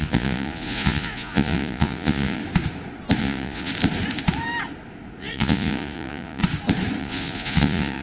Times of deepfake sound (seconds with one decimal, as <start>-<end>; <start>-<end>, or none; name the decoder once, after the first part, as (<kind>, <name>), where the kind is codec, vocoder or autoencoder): 0.0-2.4 (vocoder, Vocos); 3.2-3.7; 5.2-6.4; 7.0-8.0